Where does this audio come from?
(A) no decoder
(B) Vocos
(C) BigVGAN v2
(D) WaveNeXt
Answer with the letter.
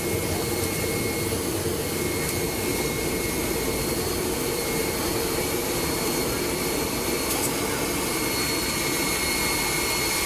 A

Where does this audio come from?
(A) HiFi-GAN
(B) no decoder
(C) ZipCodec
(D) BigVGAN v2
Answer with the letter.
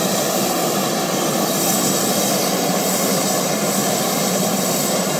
D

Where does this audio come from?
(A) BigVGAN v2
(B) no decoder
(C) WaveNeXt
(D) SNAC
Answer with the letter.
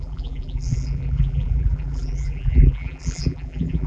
A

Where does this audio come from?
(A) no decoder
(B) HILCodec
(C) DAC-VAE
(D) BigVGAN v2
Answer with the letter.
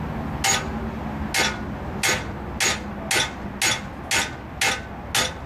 A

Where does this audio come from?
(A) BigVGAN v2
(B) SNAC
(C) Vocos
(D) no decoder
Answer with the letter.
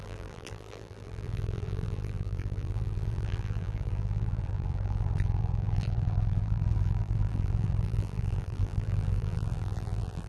A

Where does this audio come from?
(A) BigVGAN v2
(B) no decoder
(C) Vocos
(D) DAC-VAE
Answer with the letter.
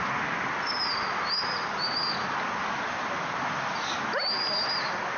B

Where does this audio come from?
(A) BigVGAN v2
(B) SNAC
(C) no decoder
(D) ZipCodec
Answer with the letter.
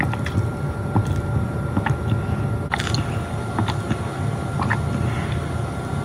C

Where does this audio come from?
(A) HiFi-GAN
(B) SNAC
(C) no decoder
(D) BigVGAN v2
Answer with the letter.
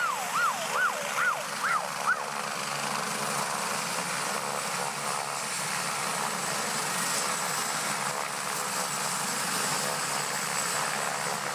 C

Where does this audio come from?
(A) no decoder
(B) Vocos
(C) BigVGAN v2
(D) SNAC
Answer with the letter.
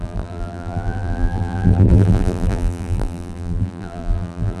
C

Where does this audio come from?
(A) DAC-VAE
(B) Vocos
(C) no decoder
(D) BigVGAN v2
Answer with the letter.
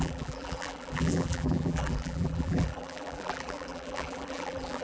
D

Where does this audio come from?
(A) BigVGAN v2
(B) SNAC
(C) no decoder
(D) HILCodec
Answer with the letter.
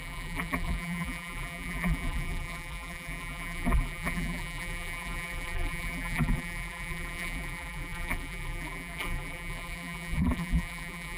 A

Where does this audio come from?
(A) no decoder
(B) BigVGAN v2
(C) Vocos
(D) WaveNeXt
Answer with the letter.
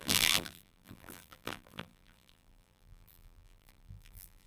B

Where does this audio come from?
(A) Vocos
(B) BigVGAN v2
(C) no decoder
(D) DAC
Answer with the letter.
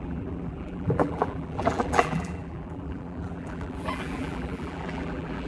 B